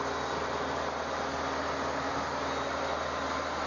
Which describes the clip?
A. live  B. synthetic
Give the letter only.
A